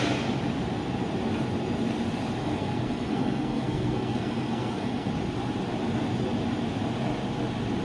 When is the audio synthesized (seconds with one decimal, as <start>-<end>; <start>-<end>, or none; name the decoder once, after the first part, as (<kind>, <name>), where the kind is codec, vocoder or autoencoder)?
2.4-5.1 (codec, SNAC)